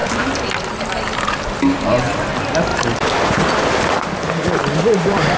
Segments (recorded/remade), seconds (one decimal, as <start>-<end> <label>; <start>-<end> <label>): 0.0-2.7 recorded; 2.7-3.4 remade; 3.4-4.6 recorded; 4.6-5.4 remade